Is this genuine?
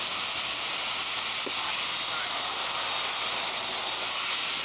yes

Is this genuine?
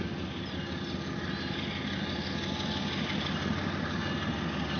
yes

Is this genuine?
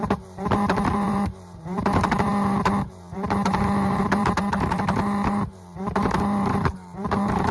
no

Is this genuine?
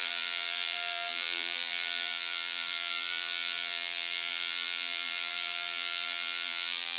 no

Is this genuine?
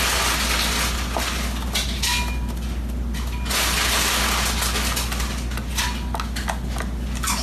yes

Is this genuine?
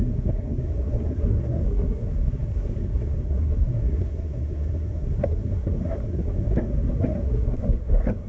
no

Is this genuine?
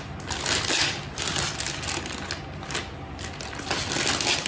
yes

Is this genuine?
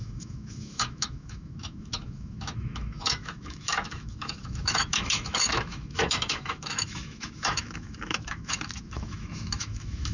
no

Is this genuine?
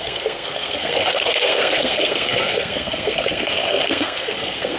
no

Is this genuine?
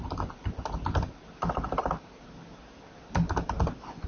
yes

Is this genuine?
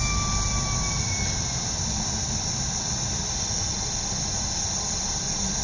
yes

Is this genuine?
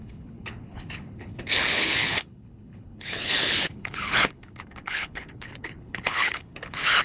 no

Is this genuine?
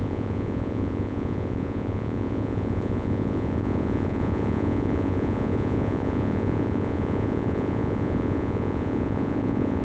no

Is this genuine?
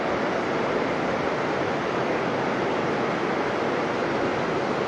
yes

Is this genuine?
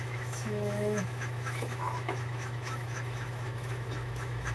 no